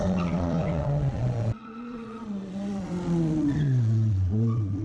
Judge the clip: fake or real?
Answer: fake